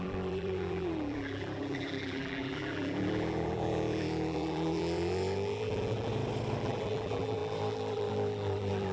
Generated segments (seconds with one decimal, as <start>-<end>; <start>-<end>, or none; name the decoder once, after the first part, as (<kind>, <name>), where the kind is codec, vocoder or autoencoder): 0.0-6.1 (vocoder, BigVGAN v2); 6.6-8.9